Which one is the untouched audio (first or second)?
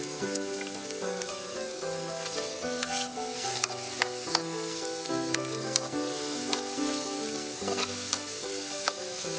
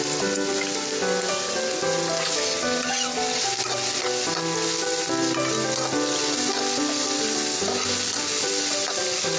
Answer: second